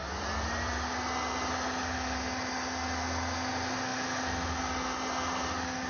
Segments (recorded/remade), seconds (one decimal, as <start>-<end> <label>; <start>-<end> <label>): 0.0-5.9 recorded